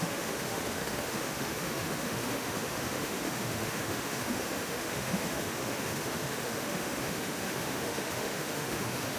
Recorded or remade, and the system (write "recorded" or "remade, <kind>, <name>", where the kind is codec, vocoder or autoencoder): remade, autoencoder, DAC-VAE